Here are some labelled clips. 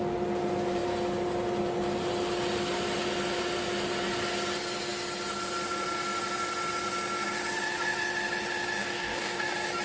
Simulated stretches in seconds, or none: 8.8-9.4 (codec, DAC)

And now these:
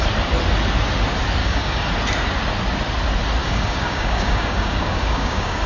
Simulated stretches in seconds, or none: 1.4-1.9 (codec, DAC); 3.4-5.7

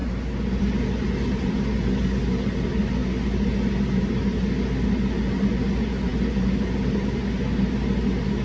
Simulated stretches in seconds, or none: none

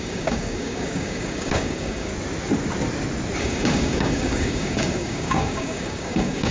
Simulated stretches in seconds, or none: 0.0-2.1 (codec, DAC); 3.4-6.5